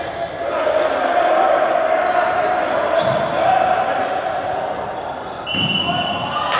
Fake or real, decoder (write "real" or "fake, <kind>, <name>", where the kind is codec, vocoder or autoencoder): real